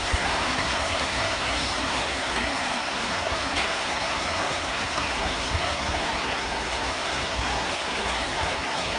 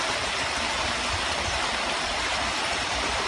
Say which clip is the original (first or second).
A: second